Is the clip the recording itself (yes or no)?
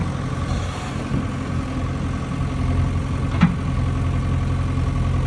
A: yes